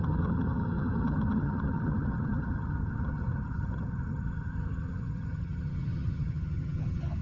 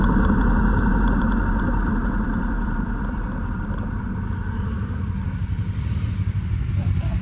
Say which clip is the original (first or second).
second